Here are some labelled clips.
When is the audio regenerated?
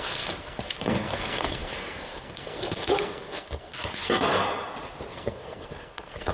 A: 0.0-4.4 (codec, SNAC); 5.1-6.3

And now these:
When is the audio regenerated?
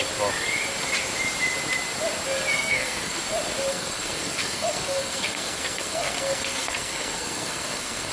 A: 2.5-3.2 (codec, SNAC); 3.7-8.1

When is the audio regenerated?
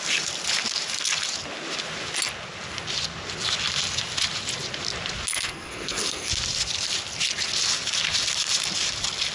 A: 5.3-6.3 (codec, SNAC)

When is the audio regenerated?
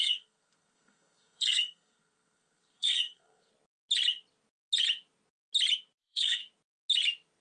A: 0.0-3.5 (codec, SNAC); 6.0-6.4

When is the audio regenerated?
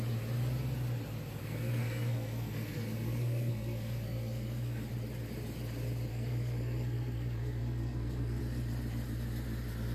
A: 1.4-4.9 (codec, SNAC); 6.1-8.4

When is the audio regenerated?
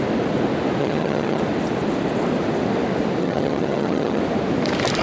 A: 0.8-1.4 (vocoder, HiFi-GAN); 3.2-4.2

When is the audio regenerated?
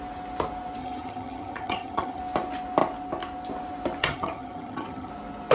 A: 0.8-2.2 (vocoder, HiFi-GAN); 4.0-5.1